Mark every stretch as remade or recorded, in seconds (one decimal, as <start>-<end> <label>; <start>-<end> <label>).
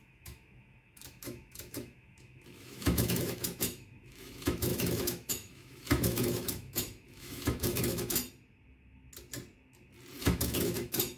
0.0-8.2 remade; 8.2-10.2 recorded; 10.2-11.2 remade